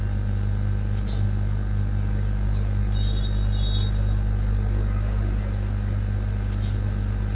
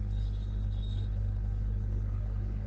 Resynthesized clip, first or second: second